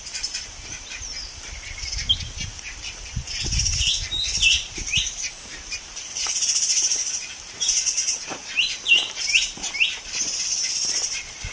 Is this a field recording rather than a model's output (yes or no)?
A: no